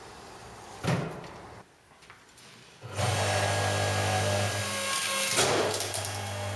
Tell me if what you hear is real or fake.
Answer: real